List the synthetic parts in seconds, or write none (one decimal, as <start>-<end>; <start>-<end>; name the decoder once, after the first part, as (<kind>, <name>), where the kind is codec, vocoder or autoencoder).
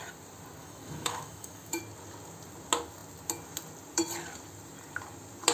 0.6-1.8 (autoencoder, DAC-VAE)